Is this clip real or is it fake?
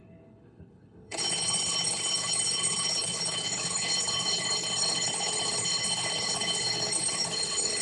fake